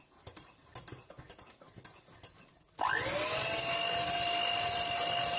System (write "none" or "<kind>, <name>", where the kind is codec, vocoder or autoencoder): none